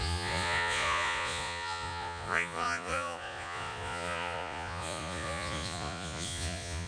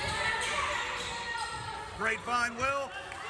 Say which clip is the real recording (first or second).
second